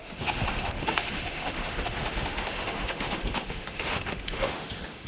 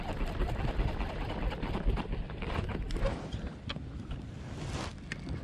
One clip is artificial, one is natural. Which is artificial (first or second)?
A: first